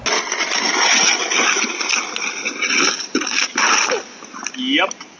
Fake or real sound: real